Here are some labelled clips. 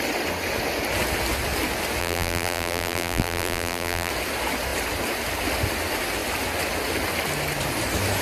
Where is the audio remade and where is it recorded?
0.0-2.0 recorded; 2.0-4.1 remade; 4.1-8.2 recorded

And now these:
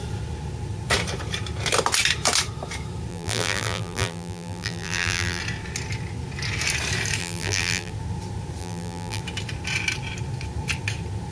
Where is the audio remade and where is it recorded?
0.0-3.1 recorded; 3.1-5.4 remade; 5.4-7.2 recorded; 7.2-7.9 remade; 7.9-8.6 recorded; 8.6-9.2 remade; 9.2-11.3 recorded

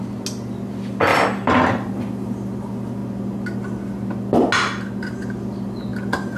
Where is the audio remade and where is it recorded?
0.0-1.1 recorded; 1.1-1.9 remade; 1.9-6.4 recorded

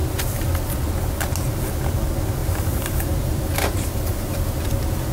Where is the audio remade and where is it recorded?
0.0-2.4 recorded; 2.4-4.4 remade; 4.4-5.1 recorded